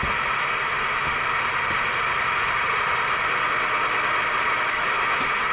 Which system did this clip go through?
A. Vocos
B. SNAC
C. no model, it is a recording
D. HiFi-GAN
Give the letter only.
C